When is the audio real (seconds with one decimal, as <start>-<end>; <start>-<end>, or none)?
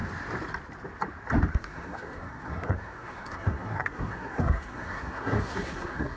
0.0-1.5